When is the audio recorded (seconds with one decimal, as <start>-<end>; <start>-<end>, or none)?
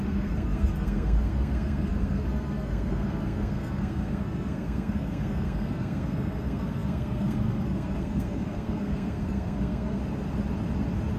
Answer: 10.0-11.2